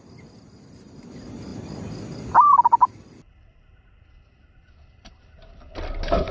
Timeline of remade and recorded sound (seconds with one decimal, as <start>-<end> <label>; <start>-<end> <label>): 0.0-6.3 recorded